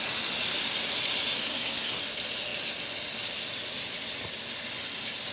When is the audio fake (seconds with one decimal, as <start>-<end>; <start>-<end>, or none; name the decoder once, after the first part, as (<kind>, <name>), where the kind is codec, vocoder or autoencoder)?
1.4-2.0 (codec, SNAC)